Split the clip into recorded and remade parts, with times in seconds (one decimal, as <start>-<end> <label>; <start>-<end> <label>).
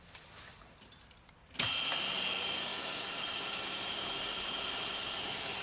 0.0-2.7 remade; 2.7-3.2 recorded; 3.2-5.6 remade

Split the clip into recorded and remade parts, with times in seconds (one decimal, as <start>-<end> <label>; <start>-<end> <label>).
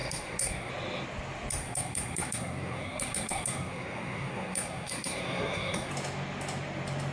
0.0-0.7 remade; 0.7-1.6 recorded; 1.6-5.9 remade; 5.9-7.1 recorded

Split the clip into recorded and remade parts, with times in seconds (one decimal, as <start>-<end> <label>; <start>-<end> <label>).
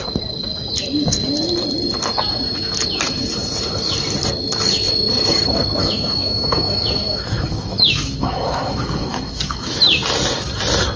0.0-5.8 recorded; 5.8-9.8 remade; 9.8-11.0 recorded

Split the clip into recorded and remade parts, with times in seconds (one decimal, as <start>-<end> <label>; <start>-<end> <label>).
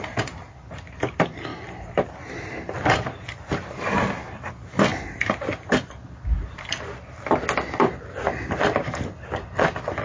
0.0-10.0 recorded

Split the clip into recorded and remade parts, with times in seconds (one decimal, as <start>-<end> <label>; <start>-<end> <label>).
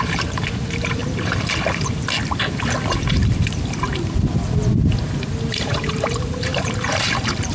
0.0-1.0 remade; 1.0-2.9 recorded; 2.9-3.9 remade; 3.9-5.5 recorded; 5.5-7.5 remade